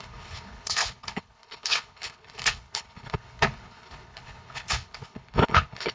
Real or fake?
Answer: fake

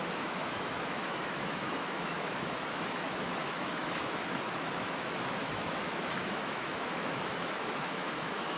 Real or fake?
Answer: fake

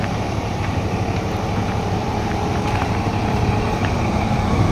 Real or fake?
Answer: fake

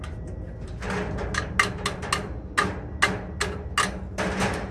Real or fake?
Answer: real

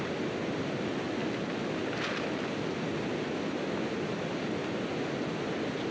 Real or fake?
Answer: real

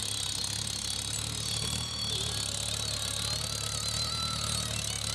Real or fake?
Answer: real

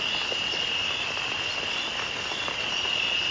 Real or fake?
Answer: real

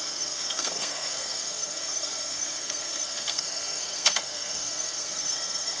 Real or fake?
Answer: fake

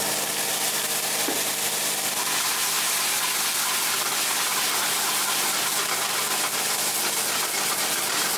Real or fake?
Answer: real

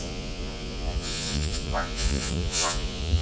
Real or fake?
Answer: fake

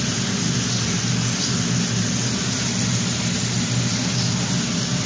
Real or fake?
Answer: real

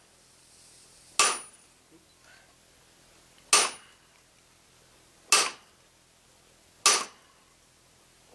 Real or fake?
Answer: real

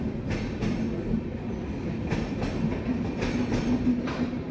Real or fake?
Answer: real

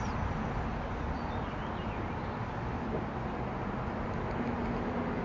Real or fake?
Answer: real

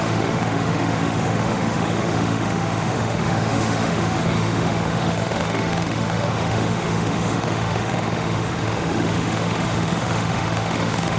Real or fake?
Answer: fake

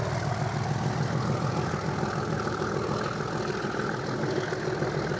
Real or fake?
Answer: real